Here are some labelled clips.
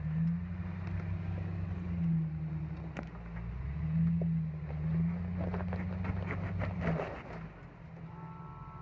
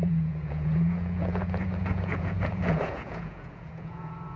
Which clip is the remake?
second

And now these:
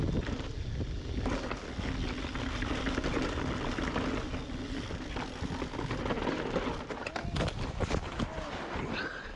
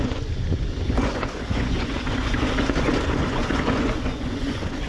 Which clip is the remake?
second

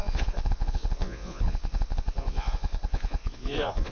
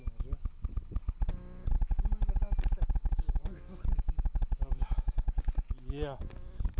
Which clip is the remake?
first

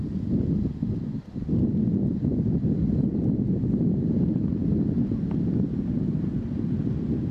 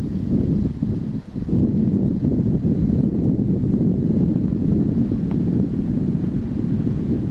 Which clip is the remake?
second